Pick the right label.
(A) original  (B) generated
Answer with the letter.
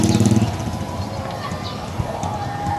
A